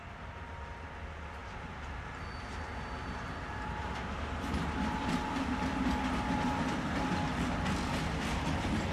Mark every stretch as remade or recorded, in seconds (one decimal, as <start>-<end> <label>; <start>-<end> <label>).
0.0-1.4 recorded; 1.4-5.5 remade; 5.5-8.9 recorded